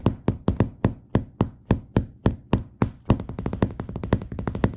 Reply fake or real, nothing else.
real